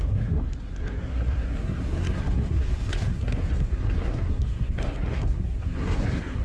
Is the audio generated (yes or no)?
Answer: yes